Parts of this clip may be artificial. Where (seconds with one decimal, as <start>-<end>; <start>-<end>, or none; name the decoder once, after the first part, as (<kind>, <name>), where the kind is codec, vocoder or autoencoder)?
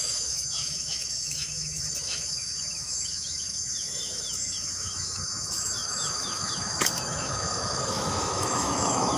0.0-9.2 (autoencoder, DAC-VAE)